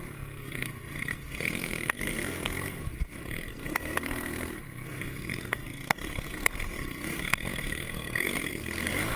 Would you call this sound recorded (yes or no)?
no